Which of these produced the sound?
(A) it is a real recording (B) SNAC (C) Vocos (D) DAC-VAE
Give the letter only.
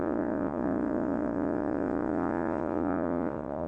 C